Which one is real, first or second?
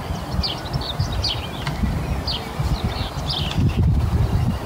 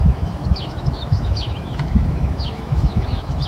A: first